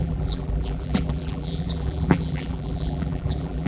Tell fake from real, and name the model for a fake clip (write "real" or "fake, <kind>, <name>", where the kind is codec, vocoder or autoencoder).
fake, vocoder, BigVGAN v2